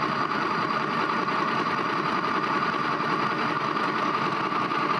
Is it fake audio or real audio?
real